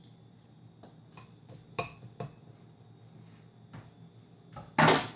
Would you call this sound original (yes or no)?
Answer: yes